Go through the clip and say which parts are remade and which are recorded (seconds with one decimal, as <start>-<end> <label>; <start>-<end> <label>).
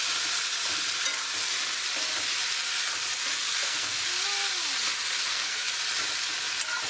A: 0.0-3.6 recorded; 3.6-4.1 remade; 4.1-5.2 recorded; 5.2-5.7 remade; 5.7-6.9 recorded